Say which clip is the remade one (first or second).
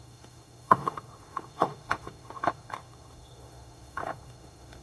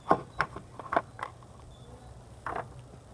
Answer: first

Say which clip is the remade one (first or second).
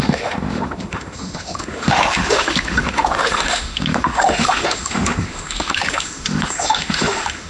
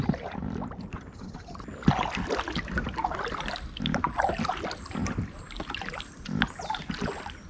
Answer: first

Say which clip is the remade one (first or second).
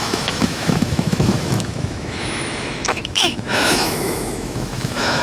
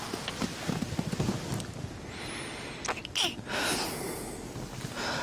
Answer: first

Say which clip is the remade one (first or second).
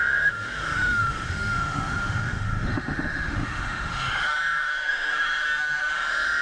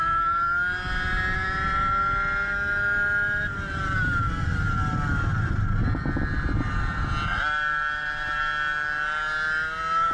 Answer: first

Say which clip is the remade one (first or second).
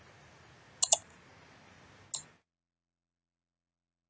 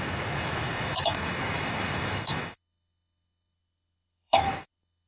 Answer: second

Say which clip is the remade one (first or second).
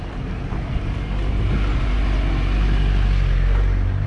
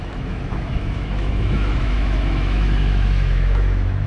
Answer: second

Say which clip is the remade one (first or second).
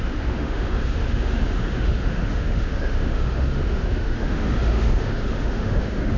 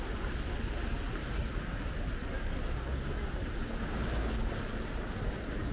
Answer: first